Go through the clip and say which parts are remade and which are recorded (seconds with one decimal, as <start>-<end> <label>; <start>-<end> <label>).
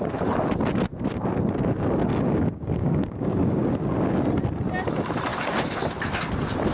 0.0-2.1 recorded; 2.1-3.7 remade; 3.7-6.7 recorded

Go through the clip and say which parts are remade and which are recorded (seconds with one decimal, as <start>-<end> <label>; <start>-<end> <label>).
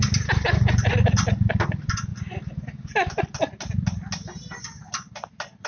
0.0-5.7 recorded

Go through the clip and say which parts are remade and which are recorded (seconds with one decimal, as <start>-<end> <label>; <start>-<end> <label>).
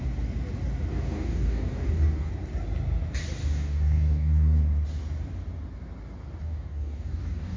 0.0-0.9 recorded; 0.9-2.3 remade; 2.3-3.4 recorded; 3.4-4.6 remade; 4.6-6.4 recorded; 6.4-7.6 remade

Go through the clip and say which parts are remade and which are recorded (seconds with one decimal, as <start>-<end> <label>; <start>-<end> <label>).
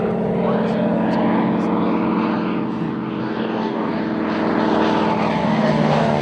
0.0-3.2 recorded; 3.2-4.0 remade; 4.0-5.4 recorded; 5.4-6.2 remade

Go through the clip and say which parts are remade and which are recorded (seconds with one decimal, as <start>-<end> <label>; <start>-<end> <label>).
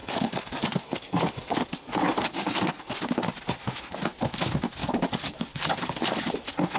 0.0-2.7 remade; 2.7-4.8 recorded; 4.8-6.2 remade; 6.2-6.8 recorded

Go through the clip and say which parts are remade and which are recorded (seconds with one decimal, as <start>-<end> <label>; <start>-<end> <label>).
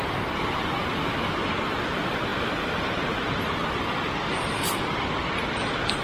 0.0-6.0 recorded